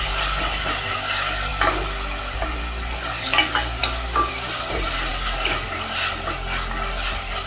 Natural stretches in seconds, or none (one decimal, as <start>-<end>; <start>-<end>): 0.0-7.5